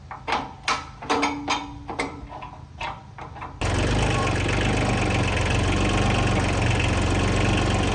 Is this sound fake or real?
real